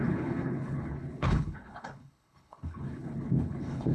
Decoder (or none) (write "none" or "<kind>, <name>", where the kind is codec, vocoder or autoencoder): codec, HILCodec